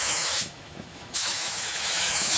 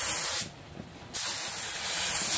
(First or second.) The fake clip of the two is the first